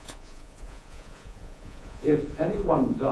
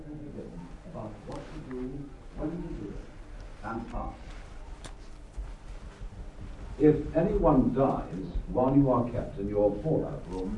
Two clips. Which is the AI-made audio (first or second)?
first